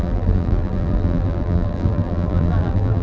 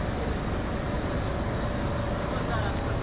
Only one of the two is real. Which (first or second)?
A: second